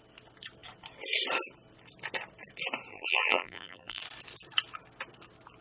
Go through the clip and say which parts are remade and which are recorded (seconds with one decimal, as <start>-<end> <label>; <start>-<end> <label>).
0.0-2.9 recorded; 2.9-4.0 remade; 4.0-5.6 recorded